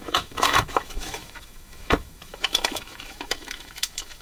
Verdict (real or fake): fake